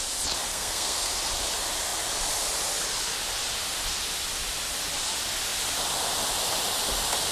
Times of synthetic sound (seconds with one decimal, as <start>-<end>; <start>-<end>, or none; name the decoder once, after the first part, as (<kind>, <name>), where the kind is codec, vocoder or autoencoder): 0.5-1.1 (codec, SNAC)